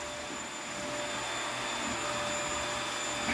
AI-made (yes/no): no